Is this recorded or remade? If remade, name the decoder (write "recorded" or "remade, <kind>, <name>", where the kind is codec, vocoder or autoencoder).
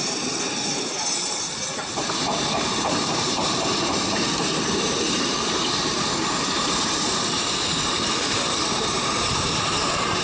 remade, vocoder, BigVGAN v2